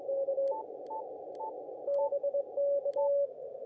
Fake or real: real